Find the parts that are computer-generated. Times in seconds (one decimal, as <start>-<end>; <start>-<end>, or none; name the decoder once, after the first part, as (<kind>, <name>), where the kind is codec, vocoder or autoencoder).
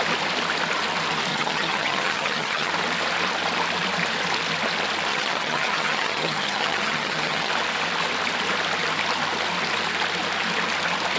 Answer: 1.3-2.7 (vocoder, HiFi-GAN); 5.1-7.5